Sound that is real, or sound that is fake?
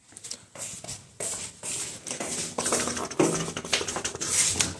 real